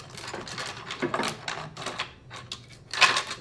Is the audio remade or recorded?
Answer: recorded